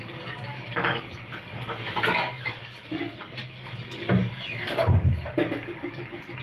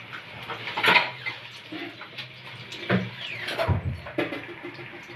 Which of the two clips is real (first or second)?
second